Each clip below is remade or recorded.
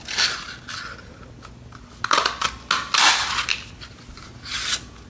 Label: recorded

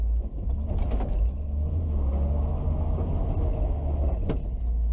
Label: recorded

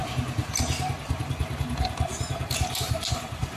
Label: recorded